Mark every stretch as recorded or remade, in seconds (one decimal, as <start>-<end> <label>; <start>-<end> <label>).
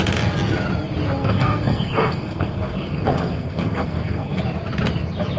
0.0-1.2 recorded; 1.2-4.4 remade; 4.4-5.4 recorded